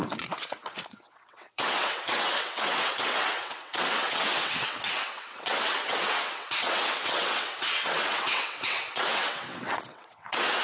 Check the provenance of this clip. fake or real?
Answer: fake